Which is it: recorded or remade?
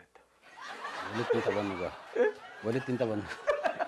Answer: recorded